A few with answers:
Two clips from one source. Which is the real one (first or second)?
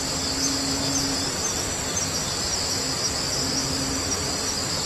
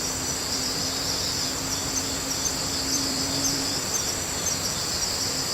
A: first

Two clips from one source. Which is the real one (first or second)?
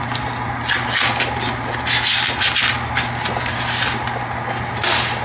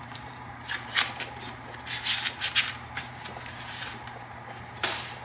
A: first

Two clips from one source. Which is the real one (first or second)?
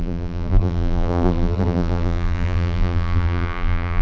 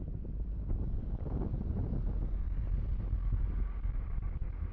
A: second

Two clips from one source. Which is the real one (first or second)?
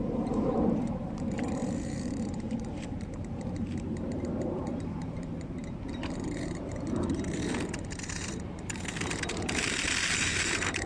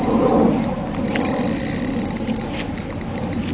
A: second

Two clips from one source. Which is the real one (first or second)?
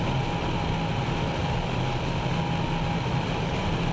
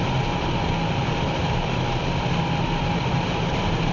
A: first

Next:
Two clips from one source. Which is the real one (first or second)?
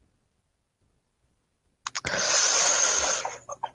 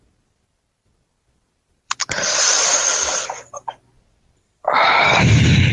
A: first